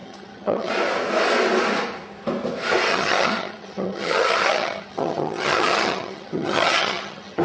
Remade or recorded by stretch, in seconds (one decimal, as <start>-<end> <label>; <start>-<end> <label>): 0.0-0.7 remade; 0.7-2.9 recorded; 2.9-7.4 remade